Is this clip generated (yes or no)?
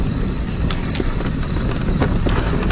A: no